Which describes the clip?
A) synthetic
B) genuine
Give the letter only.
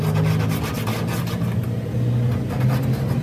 B